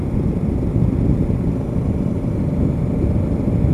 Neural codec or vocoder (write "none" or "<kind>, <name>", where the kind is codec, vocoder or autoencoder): none